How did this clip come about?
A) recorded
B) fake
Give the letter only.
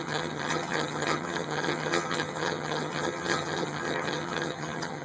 B